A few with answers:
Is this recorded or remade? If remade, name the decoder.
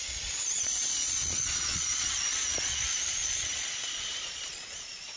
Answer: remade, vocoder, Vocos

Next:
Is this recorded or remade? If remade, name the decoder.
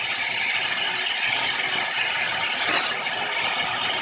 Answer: recorded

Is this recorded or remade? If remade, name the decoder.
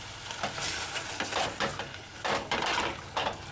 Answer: recorded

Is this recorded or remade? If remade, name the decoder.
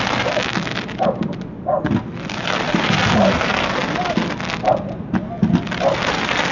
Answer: recorded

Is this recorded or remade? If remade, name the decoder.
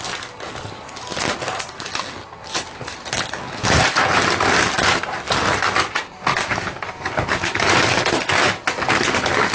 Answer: recorded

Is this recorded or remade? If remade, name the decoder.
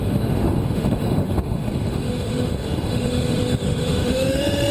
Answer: remade, autoencoder, DAC-VAE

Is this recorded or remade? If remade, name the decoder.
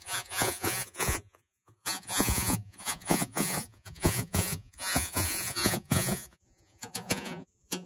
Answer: remade, vocoder, Vocos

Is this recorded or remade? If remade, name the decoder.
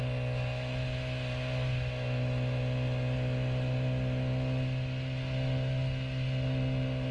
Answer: recorded